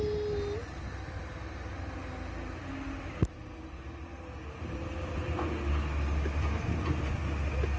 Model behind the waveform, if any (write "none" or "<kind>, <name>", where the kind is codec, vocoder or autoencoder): none